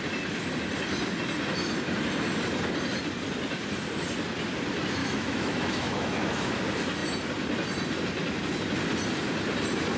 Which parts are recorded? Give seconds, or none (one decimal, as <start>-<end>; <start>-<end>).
0.0-5.0; 6.5-10.0